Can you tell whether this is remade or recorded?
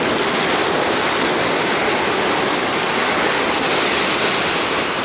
recorded